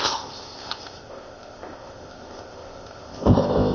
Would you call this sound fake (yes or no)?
yes